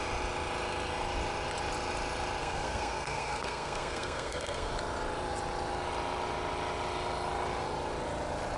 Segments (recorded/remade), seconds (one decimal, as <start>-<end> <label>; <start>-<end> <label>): 0.0-2.4 recorded; 2.4-4.7 remade; 4.7-8.6 recorded